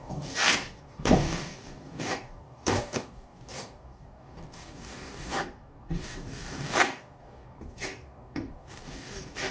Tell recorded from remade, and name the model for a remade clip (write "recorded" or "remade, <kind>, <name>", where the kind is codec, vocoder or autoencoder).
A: remade, codec, DAC